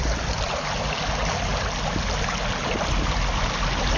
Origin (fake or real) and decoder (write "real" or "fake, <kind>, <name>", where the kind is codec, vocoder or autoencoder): real